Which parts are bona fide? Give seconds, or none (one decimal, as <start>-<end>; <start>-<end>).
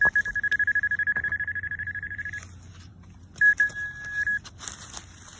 0.0-1.1; 2.2-5.4